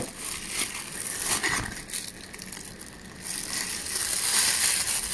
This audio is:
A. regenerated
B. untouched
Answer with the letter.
B